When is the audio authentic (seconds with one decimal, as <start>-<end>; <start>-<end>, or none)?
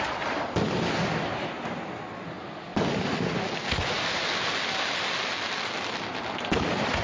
0.0-7.0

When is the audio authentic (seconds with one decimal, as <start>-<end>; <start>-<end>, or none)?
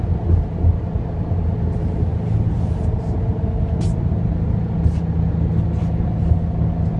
0.0-7.0